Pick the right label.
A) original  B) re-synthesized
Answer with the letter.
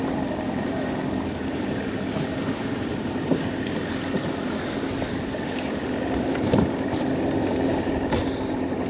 A